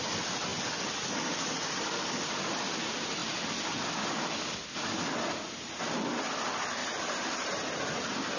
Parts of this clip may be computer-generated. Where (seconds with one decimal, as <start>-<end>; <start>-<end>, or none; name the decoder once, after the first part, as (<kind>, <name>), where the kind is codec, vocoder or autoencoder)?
6.8-7.5 (vocoder, BigVGAN v2)